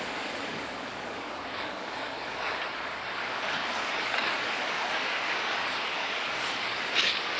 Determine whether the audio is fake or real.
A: fake